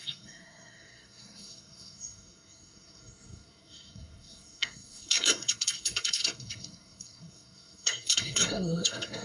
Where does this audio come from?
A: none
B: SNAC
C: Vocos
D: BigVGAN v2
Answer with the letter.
B